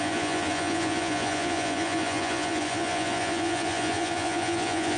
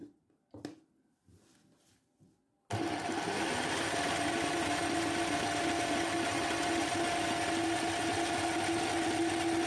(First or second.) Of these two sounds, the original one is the second